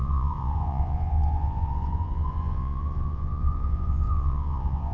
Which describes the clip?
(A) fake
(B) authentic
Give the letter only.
A